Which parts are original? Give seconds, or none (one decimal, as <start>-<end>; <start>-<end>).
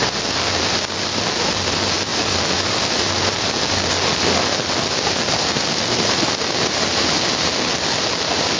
0.0-8.6